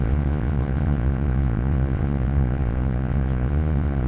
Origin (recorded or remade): remade